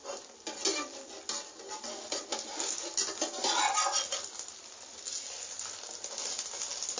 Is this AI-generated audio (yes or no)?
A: no